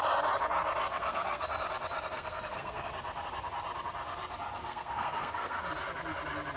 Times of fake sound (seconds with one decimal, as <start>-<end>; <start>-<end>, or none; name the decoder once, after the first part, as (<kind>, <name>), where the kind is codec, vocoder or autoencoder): 0.9-1.5 (codec, SNAC); 2.1-2.9; 4.6-5.6